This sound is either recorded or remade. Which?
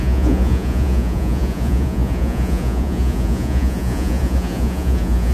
remade